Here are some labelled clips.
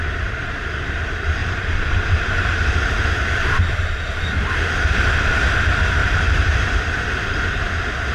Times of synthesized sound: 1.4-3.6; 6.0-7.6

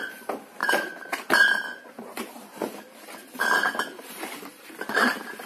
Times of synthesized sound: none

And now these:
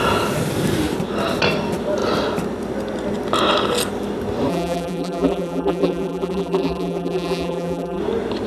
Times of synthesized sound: 4.5-8.0

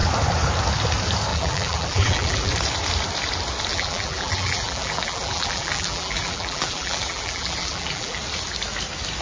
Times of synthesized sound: 1.3-2.5; 3.7-8.2

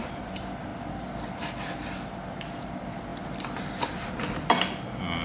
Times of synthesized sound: none

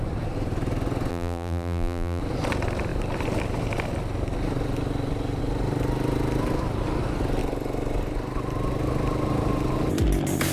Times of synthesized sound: 1.1-2.2

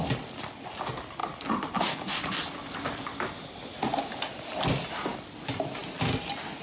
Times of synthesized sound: none

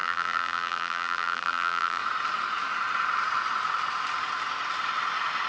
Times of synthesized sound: 0.0-2.0